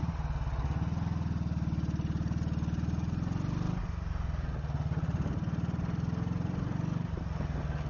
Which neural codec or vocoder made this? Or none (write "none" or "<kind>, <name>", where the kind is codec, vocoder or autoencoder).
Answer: none